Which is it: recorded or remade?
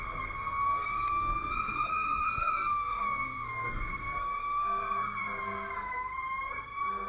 remade